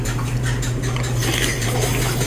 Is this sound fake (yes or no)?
yes